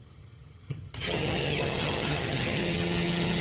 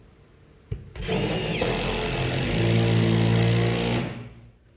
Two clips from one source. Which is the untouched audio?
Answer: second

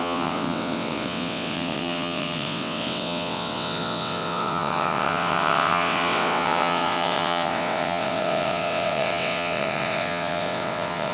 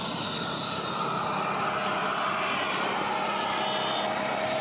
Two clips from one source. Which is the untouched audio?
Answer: second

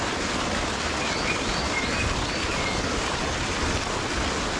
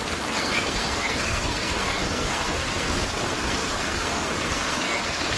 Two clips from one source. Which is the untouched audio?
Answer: first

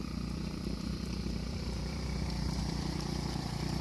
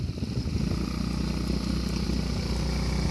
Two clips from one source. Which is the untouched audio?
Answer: second